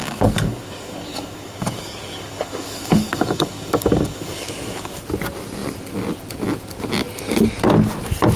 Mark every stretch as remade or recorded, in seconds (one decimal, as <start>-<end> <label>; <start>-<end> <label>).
0.0-5.0 remade; 5.0-8.4 recorded